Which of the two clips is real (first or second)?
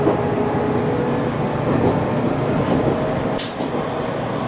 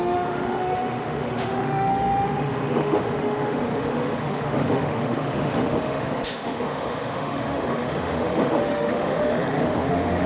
first